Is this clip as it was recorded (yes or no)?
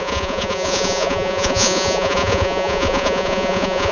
no